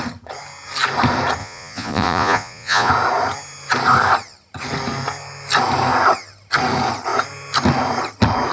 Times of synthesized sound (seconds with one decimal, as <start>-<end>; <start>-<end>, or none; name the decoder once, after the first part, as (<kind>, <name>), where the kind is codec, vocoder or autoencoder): 1.4-2.9 (vocoder, Vocos)